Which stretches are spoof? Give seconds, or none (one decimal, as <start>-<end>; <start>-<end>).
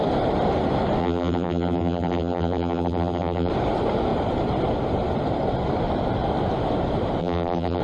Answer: 1.0-3.5; 7.2-7.8